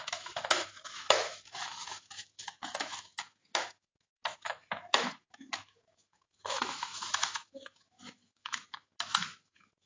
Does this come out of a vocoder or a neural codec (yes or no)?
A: yes